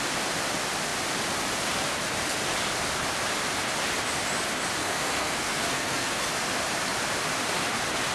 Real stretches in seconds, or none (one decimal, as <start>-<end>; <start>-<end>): 0.0-4.8; 6.3-8.1